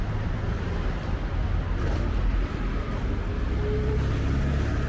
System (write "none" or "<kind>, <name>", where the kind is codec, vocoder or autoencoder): none